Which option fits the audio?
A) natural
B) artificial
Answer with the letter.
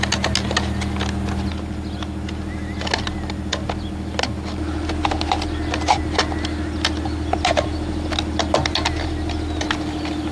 A